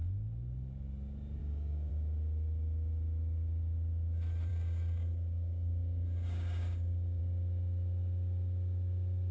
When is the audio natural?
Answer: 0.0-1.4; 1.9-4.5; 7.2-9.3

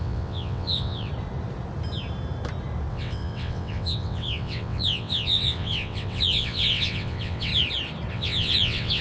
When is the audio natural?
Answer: 1.1-2.9; 7.5-8.1

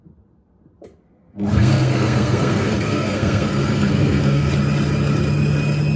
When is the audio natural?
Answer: 0.0-1.5; 4.5-6.0